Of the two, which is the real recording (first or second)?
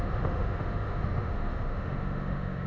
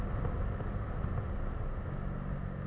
second